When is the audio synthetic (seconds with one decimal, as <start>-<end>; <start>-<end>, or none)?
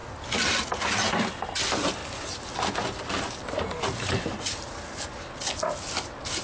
none